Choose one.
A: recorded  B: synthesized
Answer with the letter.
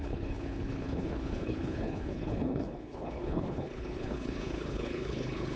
B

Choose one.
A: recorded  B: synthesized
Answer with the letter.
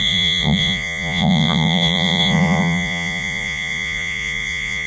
B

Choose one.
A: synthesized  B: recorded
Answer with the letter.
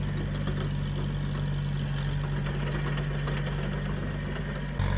B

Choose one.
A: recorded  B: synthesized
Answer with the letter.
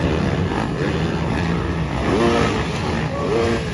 A